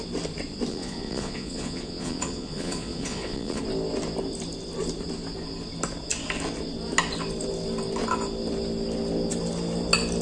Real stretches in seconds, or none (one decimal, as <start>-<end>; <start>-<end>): 0.0-0.7; 3.6-10.2